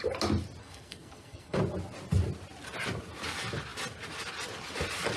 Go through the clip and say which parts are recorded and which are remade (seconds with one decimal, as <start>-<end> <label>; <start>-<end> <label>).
0.0-0.6 recorded; 0.6-1.6 remade; 1.6-5.2 recorded